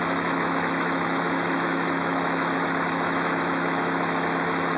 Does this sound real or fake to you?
fake